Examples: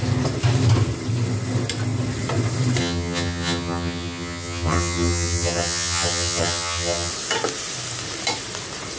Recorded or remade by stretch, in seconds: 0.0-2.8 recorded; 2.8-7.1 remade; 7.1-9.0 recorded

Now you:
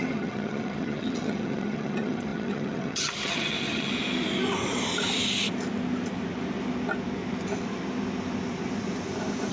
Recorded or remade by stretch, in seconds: 0.0-3.9 remade; 3.9-9.5 recorded

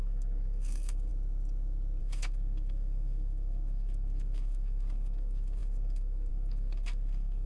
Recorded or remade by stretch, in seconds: 0.0-1.1 remade; 1.1-2.0 recorded; 2.0-7.5 remade